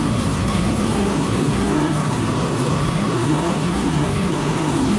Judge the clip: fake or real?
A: fake